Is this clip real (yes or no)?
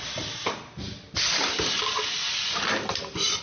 yes